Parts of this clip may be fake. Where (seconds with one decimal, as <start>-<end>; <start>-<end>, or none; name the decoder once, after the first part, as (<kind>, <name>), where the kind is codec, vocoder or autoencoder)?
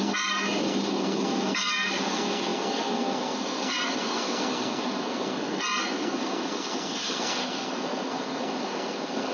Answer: 0.0-9.3 (codec, SNAC)